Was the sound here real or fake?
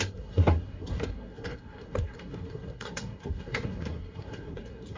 fake